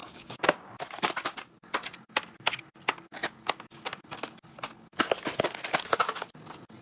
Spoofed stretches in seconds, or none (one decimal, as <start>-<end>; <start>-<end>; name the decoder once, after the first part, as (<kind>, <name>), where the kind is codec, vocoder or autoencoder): 0.0-0.7 (codec, DAC)